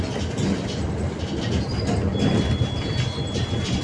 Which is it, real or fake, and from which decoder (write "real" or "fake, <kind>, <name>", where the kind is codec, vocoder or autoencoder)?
real